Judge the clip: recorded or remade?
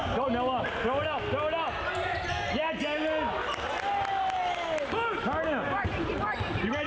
recorded